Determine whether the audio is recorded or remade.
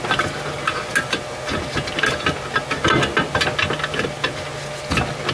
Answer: recorded